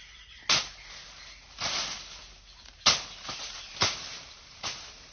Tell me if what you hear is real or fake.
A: real